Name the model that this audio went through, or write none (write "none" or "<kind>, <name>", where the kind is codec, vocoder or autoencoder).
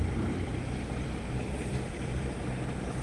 vocoder, BigVGAN v2